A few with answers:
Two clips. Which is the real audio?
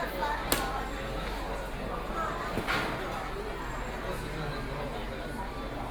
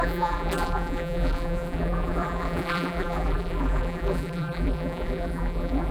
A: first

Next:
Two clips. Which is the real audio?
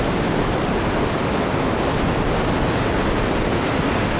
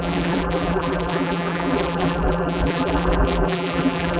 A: first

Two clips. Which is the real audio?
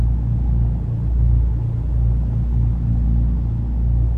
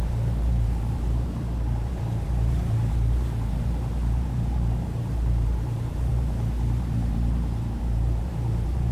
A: first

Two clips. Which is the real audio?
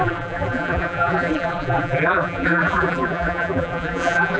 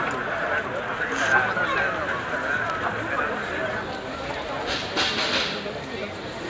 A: second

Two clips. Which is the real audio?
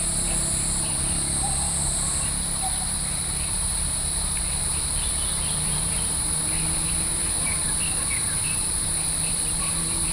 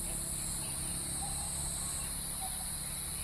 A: second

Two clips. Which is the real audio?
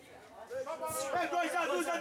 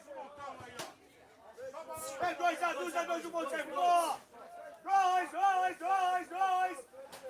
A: second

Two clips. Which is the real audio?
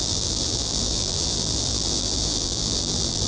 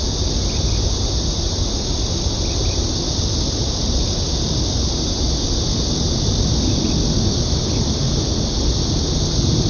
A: second